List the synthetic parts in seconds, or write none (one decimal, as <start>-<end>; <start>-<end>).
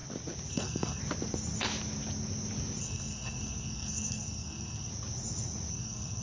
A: 0.5-1.0; 2.8-4.9; 5.7-6.2